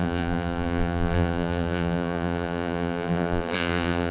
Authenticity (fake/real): fake